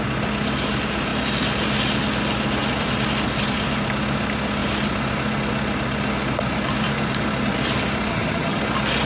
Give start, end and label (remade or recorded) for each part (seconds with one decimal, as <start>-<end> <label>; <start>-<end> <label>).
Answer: 0.0-8.1 recorded; 8.1-8.6 remade; 8.6-9.1 recorded

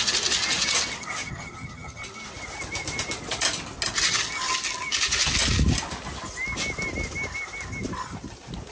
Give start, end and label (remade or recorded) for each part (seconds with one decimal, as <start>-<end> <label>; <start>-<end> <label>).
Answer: 0.0-1.2 recorded; 1.2-2.0 remade; 2.0-8.7 recorded

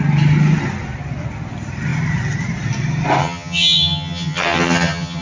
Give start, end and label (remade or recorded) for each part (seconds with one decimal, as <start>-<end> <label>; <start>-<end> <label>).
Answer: 0.0-3.2 recorded; 3.2-5.2 remade

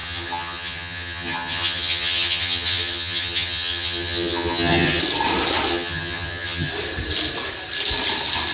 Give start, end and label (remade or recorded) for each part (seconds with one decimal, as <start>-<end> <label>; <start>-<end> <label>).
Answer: 0.0-5.0 remade; 5.0-5.7 recorded; 5.7-6.7 remade; 6.7-8.5 recorded

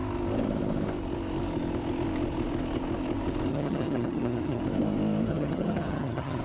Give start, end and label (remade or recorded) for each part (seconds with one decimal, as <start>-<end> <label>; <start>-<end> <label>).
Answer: 0.0-3.5 recorded; 3.5-4.6 remade; 4.6-5.3 recorded; 5.3-6.4 remade